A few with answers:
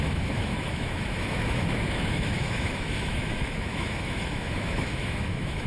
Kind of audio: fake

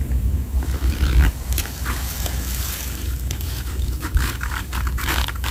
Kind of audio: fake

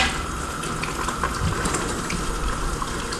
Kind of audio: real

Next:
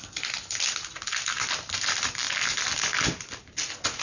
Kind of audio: real